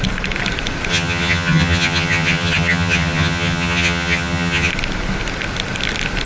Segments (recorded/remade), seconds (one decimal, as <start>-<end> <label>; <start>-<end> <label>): 0.0-0.9 recorded; 0.9-4.7 remade; 4.7-6.3 recorded